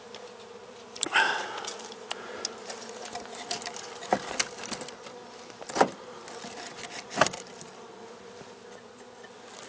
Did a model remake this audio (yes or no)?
no